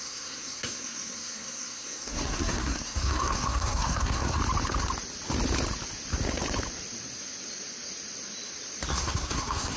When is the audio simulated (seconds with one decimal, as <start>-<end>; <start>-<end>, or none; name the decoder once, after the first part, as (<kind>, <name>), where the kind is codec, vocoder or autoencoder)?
0.0-4.4 (codec, SNAC); 8.9-9.8